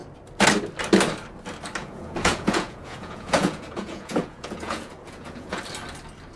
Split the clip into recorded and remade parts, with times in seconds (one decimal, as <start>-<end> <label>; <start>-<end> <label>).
0.0-1.8 recorded; 1.8-5.6 remade; 5.6-6.4 recorded